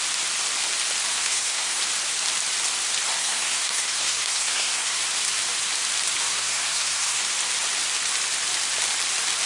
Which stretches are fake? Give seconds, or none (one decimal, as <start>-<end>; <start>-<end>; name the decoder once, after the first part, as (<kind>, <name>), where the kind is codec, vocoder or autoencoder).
1.1-1.8 (codec, SNAC); 3.2-5.0; 6.3-7.2